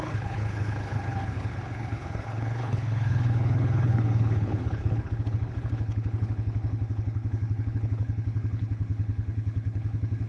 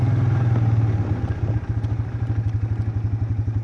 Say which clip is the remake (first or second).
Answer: first